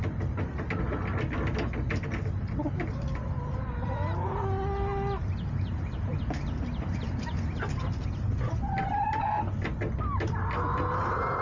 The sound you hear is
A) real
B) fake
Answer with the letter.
A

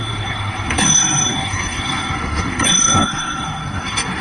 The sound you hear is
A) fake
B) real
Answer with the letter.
A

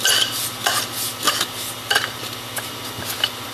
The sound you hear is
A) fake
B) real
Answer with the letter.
B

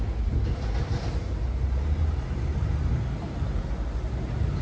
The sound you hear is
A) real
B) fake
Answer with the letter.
A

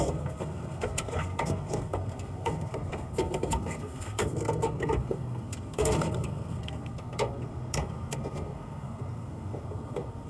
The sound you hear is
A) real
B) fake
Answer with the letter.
B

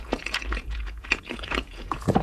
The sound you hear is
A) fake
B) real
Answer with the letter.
A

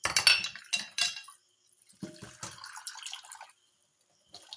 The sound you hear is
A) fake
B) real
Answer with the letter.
B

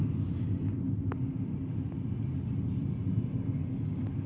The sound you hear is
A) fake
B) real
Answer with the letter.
B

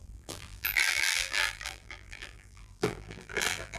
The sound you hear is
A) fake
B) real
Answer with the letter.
A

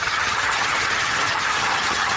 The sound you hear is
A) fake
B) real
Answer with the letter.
A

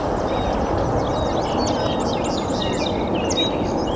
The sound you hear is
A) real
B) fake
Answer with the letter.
A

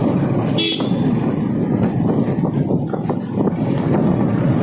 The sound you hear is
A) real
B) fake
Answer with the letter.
A